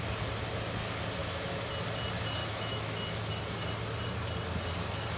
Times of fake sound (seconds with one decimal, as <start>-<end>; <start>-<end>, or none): 1.2-1.7; 2.4-3.3